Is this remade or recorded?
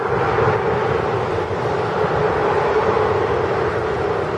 recorded